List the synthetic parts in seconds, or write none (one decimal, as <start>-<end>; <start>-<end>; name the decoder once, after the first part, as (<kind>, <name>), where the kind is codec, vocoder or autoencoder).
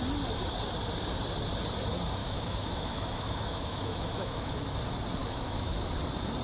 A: 2.2-4.6 (autoencoder, DAC-VAE); 5.2-5.9